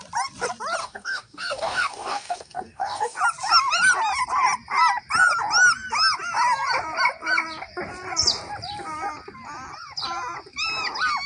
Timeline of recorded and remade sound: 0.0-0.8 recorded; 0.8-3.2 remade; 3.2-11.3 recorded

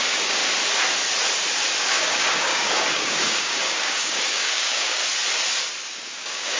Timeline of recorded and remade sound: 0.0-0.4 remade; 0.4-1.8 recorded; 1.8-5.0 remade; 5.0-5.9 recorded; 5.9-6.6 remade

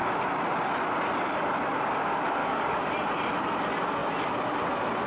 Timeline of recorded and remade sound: 0.0-2.4 recorded; 2.4-2.9 remade; 2.9-5.1 recorded

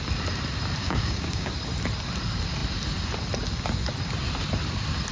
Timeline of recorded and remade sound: 0.0-0.8 recorded; 0.8-1.5 remade; 1.5-5.1 recorded

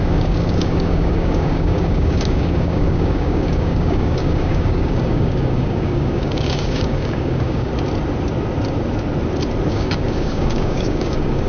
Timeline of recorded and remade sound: 0.0-7.7 remade; 7.7-9.7 recorded; 9.7-11.5 remade

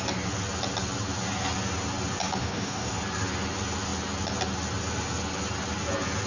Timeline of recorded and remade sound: 0.0-2.4 recorded; 2.4-2.9 remade; 2.9-6.3 recorded